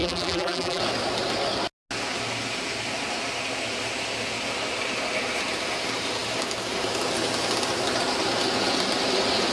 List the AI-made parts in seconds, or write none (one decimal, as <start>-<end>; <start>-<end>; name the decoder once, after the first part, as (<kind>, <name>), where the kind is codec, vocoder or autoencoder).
0.0-0.8 (vocoder, BigVGAN v2)